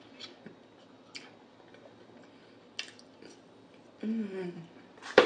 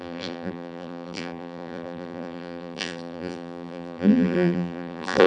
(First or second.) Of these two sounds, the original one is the first